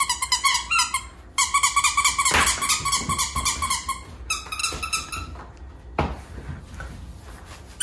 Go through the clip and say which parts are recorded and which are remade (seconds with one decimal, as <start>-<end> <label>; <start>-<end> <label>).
0.0-7.8 recorded